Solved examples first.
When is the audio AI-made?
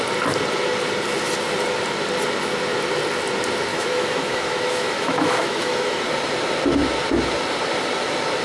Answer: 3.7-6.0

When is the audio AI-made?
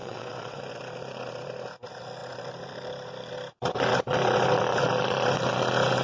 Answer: 0.0-0.6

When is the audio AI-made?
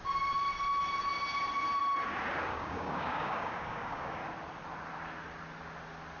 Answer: 2.5-4.2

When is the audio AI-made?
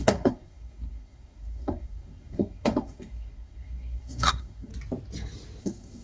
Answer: 0.0-4.7; 5.6-6.0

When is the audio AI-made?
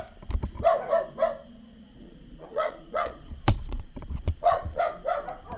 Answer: 1.4-4.8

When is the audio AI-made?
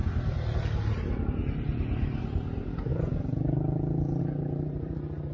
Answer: 0.9-1.4; 2.2-2.9; 4.2-5.3